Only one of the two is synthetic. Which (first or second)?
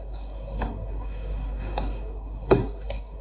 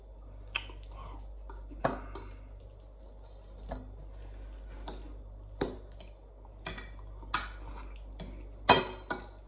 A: first